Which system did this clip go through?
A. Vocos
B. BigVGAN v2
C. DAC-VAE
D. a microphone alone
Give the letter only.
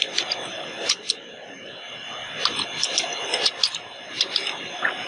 D